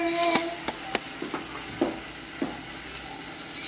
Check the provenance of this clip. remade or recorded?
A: recorded